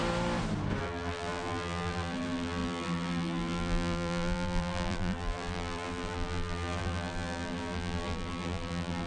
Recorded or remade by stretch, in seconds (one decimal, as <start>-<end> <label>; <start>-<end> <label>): 0.0-0.8 recorded; 0.8-9.1 remade